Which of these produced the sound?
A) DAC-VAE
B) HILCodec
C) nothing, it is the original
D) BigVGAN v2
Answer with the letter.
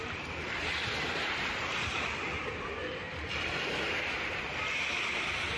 C